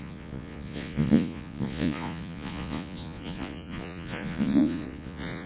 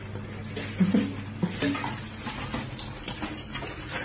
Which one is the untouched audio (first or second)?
second